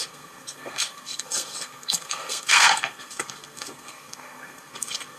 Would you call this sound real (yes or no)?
no